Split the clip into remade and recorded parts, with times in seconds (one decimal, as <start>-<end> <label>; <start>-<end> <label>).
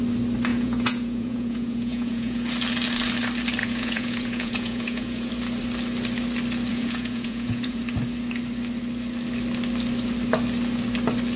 0.0-0.5 recorded; 0.5-2.5 remade; 2.5-3.6 recorded; 3.6-5.3 remade; 5.3-6.7 recorded; 6.7-7.8 remade; 7.8-11.4 recorded